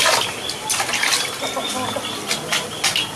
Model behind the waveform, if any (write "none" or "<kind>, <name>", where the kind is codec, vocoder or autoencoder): none